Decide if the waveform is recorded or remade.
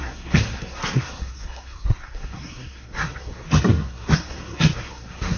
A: remade